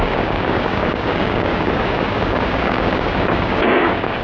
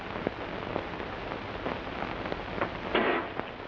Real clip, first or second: second